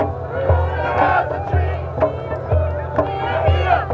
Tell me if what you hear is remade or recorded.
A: recorded